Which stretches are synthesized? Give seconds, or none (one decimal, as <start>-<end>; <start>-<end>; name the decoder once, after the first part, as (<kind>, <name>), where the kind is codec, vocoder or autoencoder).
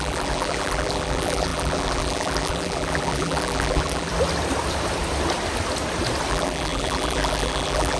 0.0-4.1 (vocoder, BigVGAN v2); 6.3-8.0